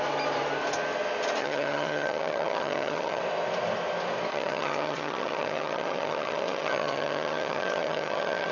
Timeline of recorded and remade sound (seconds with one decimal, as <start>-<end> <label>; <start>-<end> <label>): 0.0-1.4 recorded; 1.4-3.2 remade; 3.2-4.3 recorded; 4.3-8.5 remade